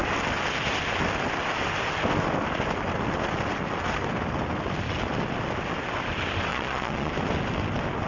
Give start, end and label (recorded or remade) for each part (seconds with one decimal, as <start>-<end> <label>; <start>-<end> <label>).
0.0-6.5 recorded; 6.5-7.1 remade; 7.1-8.1 recorded